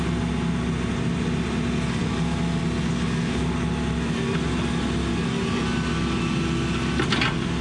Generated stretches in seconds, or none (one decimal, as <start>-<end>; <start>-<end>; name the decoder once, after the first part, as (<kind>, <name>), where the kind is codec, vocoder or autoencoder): none